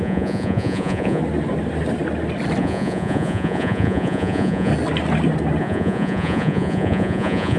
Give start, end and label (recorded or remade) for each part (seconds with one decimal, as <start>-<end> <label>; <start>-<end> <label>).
0.0-1.2 remade; 1.2-2.6 recorded; 2.6-4.7 remade; 4.7-5.6 recorded; 5.6-7.6 remade